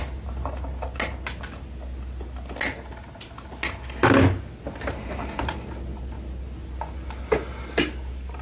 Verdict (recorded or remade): recorded